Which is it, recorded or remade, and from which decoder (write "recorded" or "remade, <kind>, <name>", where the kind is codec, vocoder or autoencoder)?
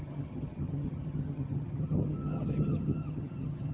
remade, vocoder, HiFi-GAN